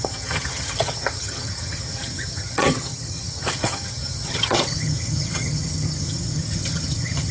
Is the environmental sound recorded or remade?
remade